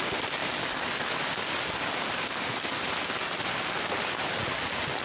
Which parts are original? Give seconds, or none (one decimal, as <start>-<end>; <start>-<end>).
0.0-5.0